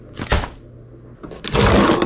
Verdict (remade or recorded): recorded